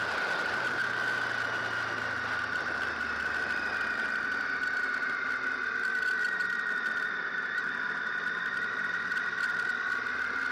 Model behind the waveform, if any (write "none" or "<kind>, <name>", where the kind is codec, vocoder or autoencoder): none